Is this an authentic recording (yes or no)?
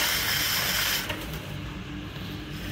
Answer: yes